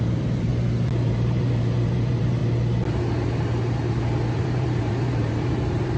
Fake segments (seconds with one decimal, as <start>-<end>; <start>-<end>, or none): 0.0-0.5; 1.1-2.4; 4.3-6.0